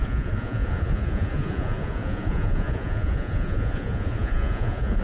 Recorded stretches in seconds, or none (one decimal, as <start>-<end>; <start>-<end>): none